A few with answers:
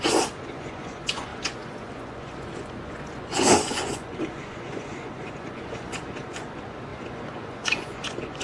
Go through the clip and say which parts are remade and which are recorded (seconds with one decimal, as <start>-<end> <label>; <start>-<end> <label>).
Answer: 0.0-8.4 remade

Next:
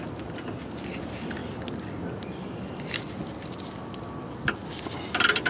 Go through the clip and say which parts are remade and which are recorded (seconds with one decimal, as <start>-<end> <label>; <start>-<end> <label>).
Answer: 0.0-5.5 recorded

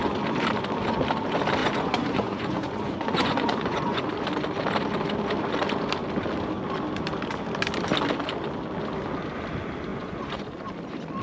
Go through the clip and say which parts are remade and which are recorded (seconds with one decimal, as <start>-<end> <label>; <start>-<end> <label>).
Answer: 0.0-1.6 recorded; 1.6-4.1 remade; 4.1-9.9 recorded; 9.9-10.7 remade; 10.7-11.2 recorded